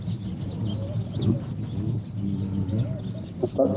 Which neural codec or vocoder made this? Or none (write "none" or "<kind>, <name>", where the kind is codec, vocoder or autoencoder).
none